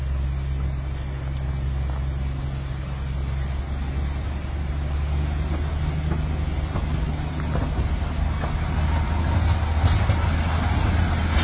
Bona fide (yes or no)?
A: yes